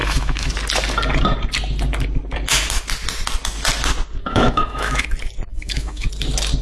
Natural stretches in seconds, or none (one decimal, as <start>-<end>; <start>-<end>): 0.5-4.2; 5.1-5.5; 6.1-6.6